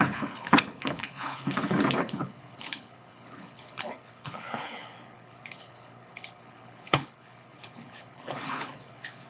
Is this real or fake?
fake